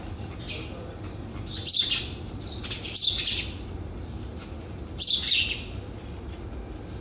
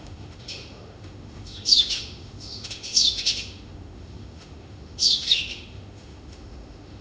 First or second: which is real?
first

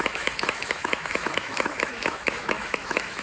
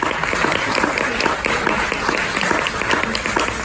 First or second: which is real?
second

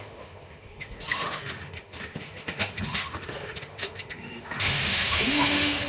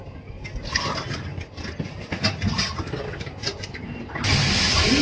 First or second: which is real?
second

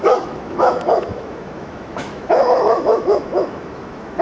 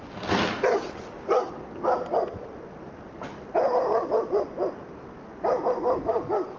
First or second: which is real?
second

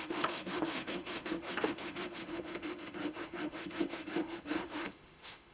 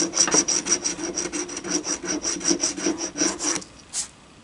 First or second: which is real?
second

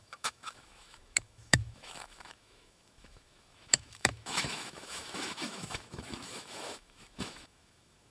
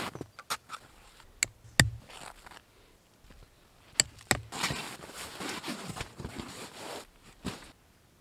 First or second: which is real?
second